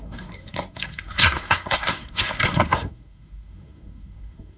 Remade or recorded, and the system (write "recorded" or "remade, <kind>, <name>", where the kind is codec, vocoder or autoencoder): remade, codec, SNAC